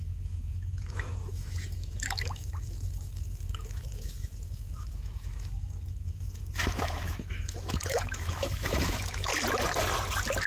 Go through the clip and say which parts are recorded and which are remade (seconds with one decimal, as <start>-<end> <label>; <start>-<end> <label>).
0.0-9.3 remade; 9.3-10.5 recorded